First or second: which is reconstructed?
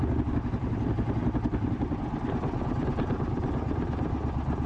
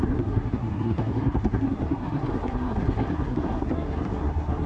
second